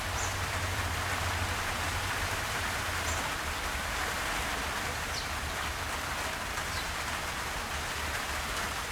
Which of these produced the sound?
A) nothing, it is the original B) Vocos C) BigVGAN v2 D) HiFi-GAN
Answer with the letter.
C